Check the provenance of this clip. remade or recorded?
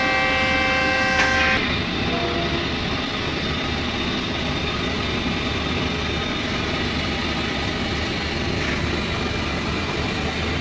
recorded